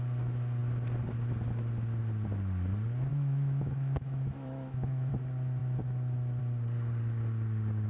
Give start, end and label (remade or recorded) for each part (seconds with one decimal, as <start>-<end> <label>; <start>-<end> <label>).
0.0-3.1 recorded; 3.1-5.1 remade; 5.1-7.9 recorded